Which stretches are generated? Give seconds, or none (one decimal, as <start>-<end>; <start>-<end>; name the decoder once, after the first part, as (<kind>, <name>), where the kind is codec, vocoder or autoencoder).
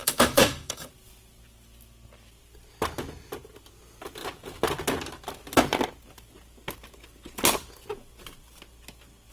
0.0-0.9 (autoencoder, DAC-VAE)